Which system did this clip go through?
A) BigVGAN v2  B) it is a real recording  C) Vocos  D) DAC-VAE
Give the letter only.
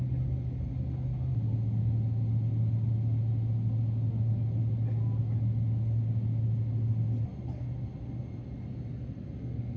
B